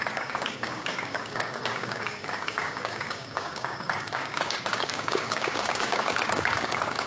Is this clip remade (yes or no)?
yes